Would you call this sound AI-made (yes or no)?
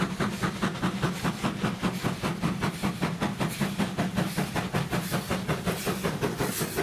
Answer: no